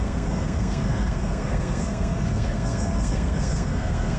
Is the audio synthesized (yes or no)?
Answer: yes